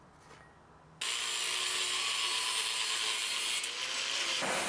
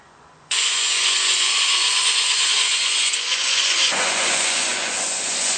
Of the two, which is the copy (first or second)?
second